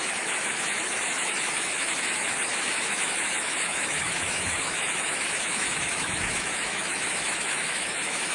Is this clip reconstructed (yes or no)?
yes